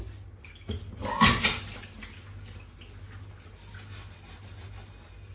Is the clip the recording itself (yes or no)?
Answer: yes